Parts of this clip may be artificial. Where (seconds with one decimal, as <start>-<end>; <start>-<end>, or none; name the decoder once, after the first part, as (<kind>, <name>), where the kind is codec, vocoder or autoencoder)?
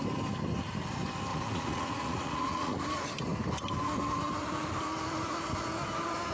1.3-2.8 (vocoder, Vocos)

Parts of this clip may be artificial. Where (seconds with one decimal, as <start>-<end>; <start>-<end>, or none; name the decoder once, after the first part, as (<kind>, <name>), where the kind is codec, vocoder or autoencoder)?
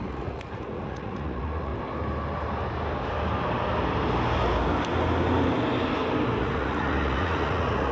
0.0-1.7 (vocoder, Vocos); 6.4-7.9